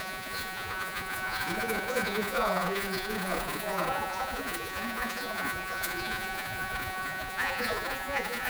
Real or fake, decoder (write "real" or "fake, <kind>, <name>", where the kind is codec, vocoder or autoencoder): fake, vocoder, Vocos